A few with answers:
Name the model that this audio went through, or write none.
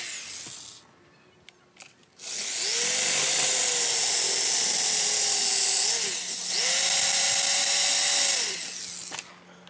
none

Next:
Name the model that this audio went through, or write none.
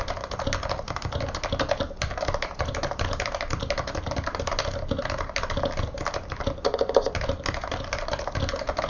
none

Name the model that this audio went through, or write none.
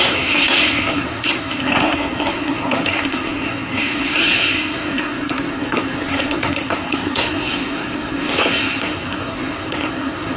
codec, SNAC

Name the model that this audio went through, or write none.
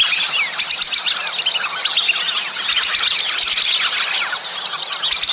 none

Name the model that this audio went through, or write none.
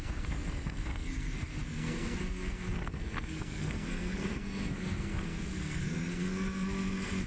codec, SNAC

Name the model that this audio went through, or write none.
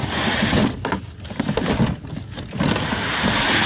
none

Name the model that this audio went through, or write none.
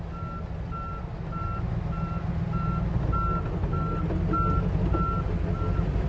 none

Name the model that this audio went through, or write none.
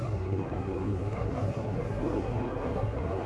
codec, SNAC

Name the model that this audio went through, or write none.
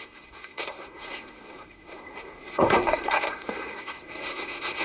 codec, SNAC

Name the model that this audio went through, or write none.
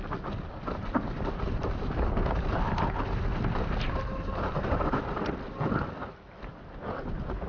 none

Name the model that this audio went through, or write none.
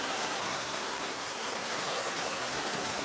codec, SNAC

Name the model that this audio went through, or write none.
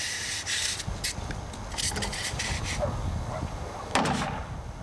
none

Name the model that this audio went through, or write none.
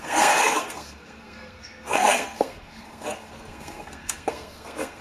codec, SNAC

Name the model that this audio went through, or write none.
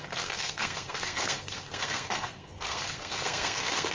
codec, SNAC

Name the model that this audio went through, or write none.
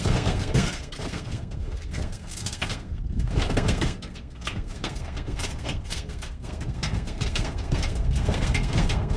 codec, SNAC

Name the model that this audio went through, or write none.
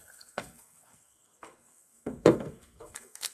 codec, SNAC